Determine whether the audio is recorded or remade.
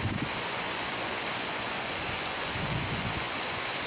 remade